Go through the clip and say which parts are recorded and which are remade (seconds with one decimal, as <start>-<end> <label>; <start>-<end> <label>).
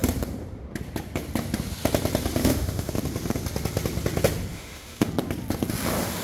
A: 0.0-2.4 recorded; 2.4-2.9 remade; 2.9-4.5 recorded; 4.5-5.1 remade; 5.1-6.2 recorded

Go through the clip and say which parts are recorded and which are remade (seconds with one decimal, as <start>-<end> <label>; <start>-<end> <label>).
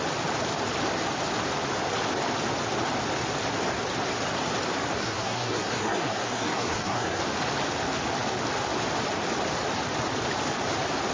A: 0.0-5.0 recorded; 5.0-7.2 remade; 7.2-11.1 recorded